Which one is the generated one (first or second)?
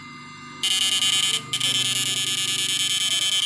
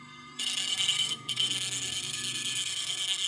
second